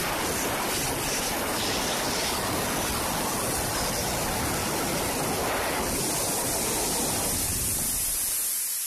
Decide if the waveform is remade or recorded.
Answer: recorded